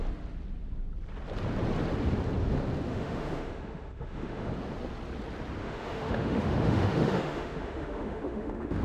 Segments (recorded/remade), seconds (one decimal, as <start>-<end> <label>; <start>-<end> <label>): 0.0-2.9 recorded; 2.9-4.5 remade; 4.5-5.6 recorded; 5.6-8.8 remade